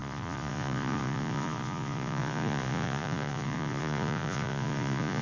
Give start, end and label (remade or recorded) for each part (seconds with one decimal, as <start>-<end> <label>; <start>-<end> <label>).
0.0-5.2 remade

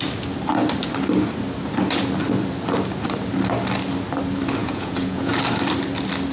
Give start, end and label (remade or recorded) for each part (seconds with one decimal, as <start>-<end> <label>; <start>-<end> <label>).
0.0-4.6 recorded; 4.6-5.3 remade; 5.3-6.3 recorded

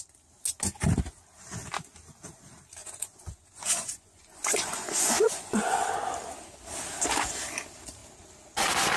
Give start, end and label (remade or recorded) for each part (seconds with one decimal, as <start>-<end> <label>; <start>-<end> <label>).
0.0-2.8 recorded; 2.8-5.9 remade; 5.9-9.0 recorded

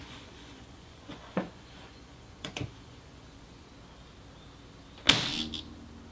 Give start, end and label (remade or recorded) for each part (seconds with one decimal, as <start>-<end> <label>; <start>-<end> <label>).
0.0-3.7 remade; 3.7-6.1 recorded

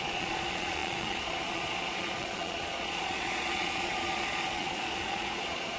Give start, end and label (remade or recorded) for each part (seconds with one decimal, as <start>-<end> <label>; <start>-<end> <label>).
0.0-5.8 remade

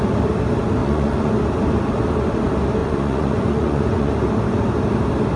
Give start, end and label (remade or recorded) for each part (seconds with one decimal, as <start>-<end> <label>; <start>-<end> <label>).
0.0-0.8 recorded; 0.8-1.3 remade; 1.3-2.8 recorded; 2.8-4.1 remade; 4.1-5.4 recorded